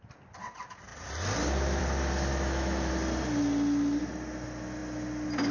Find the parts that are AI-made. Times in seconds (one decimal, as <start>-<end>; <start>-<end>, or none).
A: 2.3-2.9